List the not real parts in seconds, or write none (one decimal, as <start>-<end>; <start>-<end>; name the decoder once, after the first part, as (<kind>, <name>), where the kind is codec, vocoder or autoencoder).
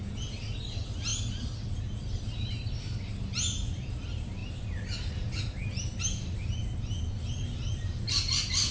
none